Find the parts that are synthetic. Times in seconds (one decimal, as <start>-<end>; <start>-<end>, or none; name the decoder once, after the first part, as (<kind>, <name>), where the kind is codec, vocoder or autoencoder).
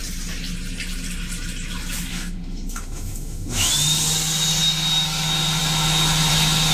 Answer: 2.1-3.7 (autoencoder, DAC-VAE)